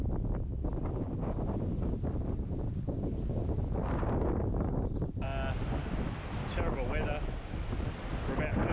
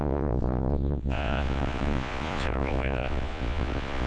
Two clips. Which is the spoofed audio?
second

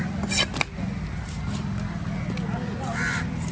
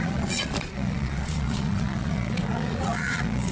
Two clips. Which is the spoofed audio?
second